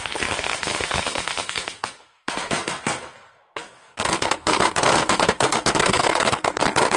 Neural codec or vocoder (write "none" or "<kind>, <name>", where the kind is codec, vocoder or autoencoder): codec, SNAC